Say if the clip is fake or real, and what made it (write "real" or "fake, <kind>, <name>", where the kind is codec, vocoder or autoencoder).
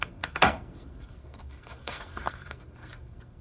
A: fake, codec, SNAC